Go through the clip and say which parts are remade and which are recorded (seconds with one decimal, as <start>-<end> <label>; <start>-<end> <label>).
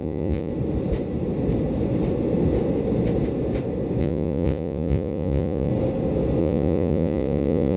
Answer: 0.0-0.5 remade; 0.5-4.0 recorded; 4.0-5.7 remade; 5.7-6.4 recorded; 6.4-7.8 remade